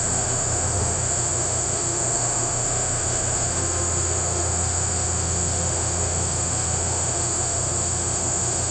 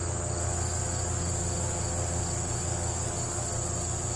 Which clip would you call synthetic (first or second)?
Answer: first